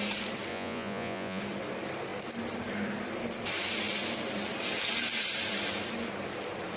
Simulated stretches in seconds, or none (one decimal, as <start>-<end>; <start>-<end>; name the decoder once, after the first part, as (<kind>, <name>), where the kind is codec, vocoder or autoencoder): 0.5-1.4 (vocoder, Vocos)